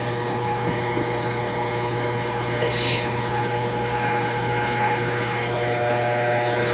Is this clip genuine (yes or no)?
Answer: no